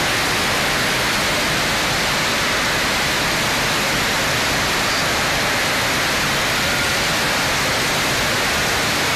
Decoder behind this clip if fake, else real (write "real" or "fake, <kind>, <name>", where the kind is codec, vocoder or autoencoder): real